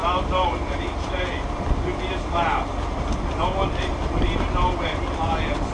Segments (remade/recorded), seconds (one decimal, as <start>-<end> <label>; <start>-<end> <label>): 0.0-5.7 recorded